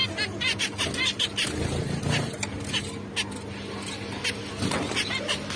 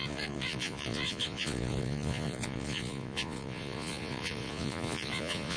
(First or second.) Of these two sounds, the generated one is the second